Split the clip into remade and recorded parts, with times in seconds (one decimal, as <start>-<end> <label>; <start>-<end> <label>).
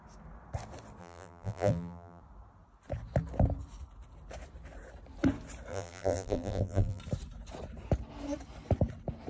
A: 0.0-1.0 recorded; 1.0-2.2 remade; 2.2-5.7 recorded; 5.7-7.0 remade; 7.0-9.3 recorded